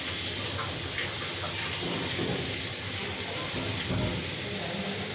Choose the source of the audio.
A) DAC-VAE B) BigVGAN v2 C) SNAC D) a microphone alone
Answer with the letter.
D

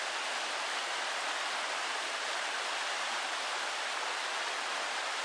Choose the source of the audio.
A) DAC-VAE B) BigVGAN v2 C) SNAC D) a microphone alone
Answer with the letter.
B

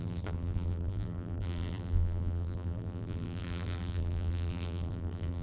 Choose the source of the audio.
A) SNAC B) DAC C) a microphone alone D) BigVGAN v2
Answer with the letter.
D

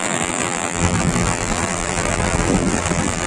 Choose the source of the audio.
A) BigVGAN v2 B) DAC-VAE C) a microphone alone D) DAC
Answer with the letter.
A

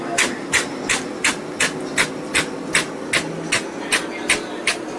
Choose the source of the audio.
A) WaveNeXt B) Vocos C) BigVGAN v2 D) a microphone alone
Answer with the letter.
D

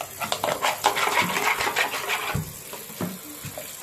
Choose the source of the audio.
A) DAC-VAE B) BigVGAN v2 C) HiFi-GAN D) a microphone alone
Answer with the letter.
D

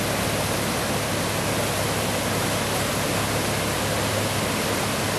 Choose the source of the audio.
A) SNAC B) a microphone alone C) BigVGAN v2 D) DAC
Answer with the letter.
B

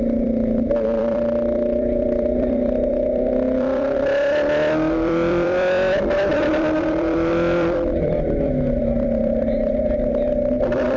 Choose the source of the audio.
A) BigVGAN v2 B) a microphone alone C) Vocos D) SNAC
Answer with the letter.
A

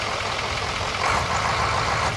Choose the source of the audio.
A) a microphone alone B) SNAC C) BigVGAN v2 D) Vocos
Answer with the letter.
C